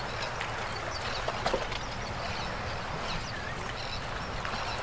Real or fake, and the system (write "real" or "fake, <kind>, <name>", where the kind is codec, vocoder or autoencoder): real